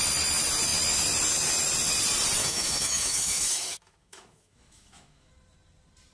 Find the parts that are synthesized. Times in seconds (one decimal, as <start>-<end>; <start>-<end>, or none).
2.4-5.3